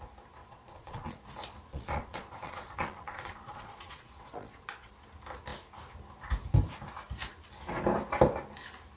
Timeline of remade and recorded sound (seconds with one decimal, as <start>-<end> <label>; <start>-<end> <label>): 0.0-0.4 recorded; 0.4-1.2 remade; 1.2-1.7 recorded; 1.7-4.9 remade; 4.9-9.0 recorded